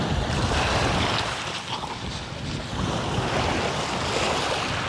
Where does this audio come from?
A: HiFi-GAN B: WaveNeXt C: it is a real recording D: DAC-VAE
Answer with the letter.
C